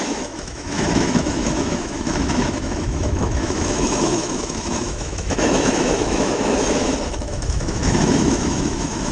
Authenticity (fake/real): fake